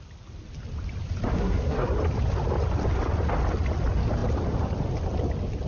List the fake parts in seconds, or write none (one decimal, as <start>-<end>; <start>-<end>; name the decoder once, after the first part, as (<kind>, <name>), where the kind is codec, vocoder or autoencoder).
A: 1.3-2.0 (codec, SNAC)